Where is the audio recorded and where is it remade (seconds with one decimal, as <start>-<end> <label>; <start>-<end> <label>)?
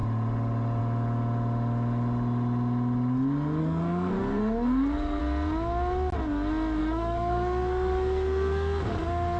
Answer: 0.0-3.6 recorded; 3.6-5.2 remade; 5.2-6.8 recorded; 6.8-8.9 remade; 8.9-9.4 recorded